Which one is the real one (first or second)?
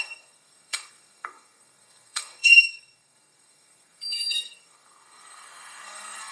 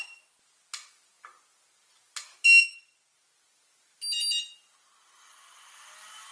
second